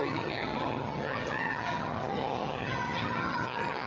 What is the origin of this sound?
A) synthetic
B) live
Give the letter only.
A